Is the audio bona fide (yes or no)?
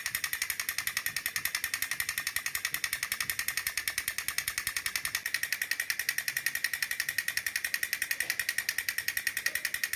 yes